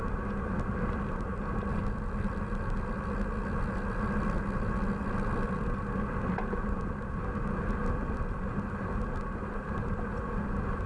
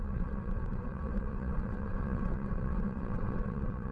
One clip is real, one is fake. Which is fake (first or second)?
second